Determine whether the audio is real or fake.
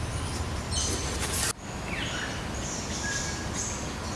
real